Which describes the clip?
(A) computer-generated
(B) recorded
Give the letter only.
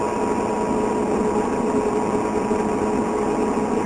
B